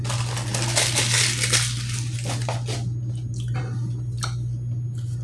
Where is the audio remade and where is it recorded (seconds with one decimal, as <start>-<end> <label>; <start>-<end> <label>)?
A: 0.0-5.2 recorded